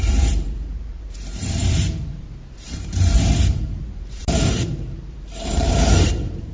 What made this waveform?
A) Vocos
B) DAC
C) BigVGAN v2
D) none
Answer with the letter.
C